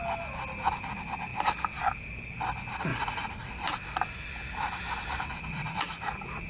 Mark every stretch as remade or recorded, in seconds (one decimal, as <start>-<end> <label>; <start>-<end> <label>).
0.0-2.9 recorded; 2.9-3.5 remade; 3.5-5.5 recorded; 5.5-6.5 remade